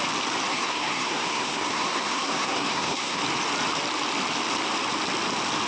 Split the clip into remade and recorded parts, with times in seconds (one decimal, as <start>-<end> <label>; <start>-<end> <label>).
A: 0.0-0.5 recorded; 0.5-3.2 remade; 3.2-5.7 recorded